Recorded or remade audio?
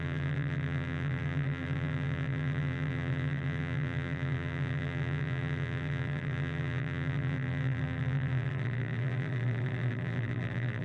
remade